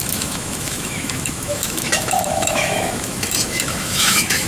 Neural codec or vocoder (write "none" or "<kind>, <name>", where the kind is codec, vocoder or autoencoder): autoencoder, DAC-VAE